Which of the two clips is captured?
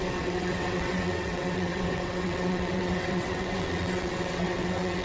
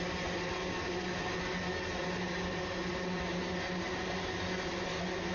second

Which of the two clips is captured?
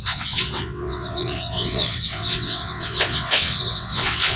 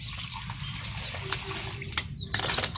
second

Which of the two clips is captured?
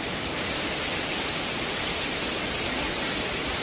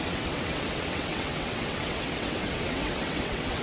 first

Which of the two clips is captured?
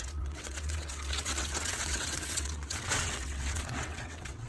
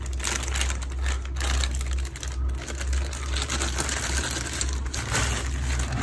second